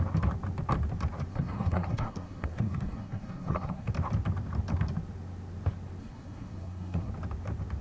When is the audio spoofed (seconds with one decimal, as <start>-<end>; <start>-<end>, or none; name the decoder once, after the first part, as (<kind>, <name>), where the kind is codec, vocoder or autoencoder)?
1.3-3.9 (codec, SNAC); 6.0-7.1